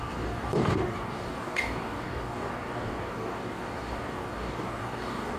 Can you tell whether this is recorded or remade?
remade